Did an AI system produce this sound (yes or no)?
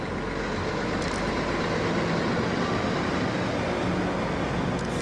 no